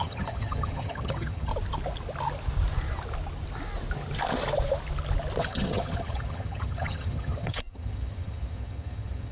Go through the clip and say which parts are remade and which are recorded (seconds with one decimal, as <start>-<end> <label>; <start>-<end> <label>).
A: 0.0-1.5 remade; 1.5-5.4 recorded; 5.4-9.3 remade